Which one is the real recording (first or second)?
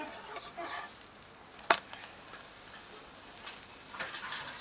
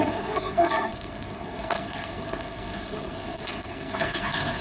first